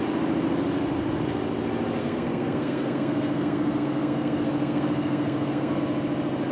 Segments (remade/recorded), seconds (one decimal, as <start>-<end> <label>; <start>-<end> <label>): 0.0-2.0 recorded; 2.0-5.8 remade; 5.8-6.5 recorded